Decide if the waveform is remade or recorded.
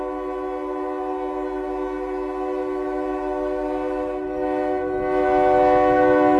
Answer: recorded